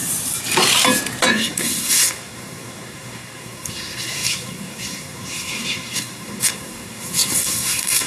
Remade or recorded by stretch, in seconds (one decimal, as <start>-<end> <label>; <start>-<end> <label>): 0.0-1.3 recorded; 1.3-8.1 remade